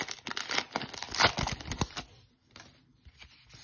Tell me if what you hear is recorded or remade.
recorded